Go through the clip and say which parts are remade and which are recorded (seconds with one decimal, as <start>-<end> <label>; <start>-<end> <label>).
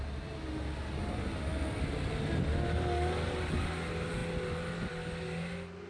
0.0-5.9 recorded